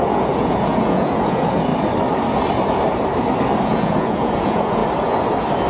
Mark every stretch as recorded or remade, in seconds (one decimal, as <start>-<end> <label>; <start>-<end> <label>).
0.0-1.7 remade; 1.7-3.6 recorded; 3.6-4.8 remade; 4.8-5.7 recorded